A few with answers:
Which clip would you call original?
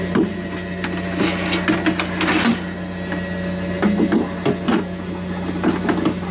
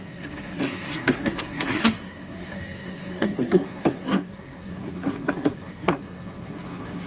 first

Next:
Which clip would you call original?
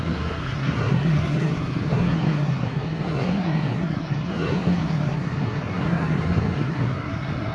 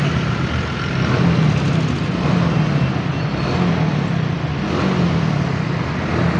second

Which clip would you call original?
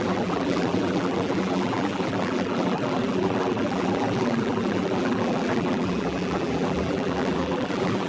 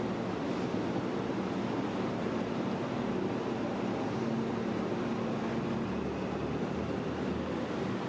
second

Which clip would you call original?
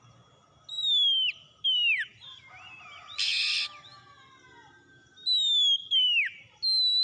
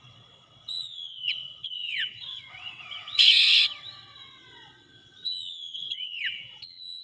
first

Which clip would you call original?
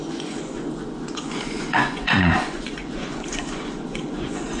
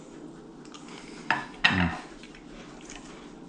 second